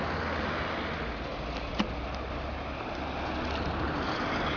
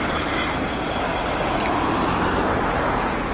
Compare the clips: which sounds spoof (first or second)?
second